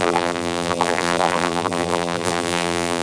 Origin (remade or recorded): remade